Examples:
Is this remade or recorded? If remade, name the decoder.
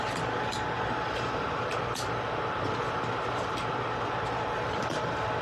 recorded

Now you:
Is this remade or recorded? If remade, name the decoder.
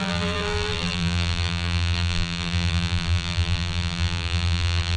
remade, vocoder, BigVGAN v2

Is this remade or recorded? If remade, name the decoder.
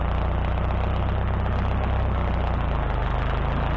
recorded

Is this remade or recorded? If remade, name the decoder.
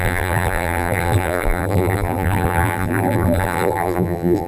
remade, vocoder, BigVGAN v2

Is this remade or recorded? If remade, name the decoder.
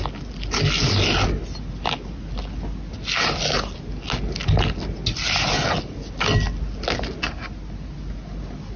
recorded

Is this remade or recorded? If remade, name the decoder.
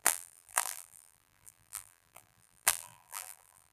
remade, vocoder, BigVGAN v2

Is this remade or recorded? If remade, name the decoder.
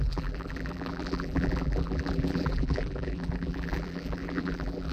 remade, vocoder, BigVGAN v2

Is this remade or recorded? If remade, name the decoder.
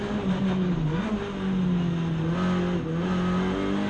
recorded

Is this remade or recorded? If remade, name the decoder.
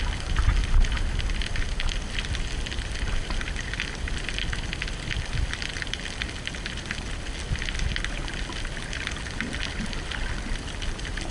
recorded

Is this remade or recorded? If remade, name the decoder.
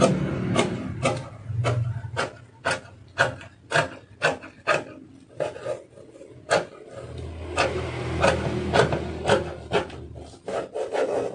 recorded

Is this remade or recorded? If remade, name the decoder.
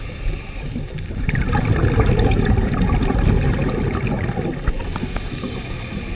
recorded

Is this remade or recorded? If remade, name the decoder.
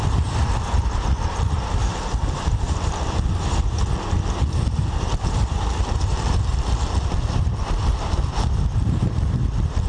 remade, vocoder, BigVGAN v2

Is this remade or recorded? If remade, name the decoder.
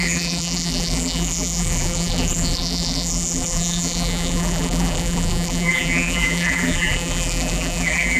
remade, vocoder, BigVGAN v2